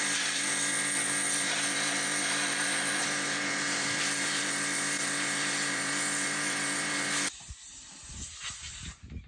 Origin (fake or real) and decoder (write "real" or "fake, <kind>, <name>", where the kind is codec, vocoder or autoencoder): fake, vocoder, BigVGAN v2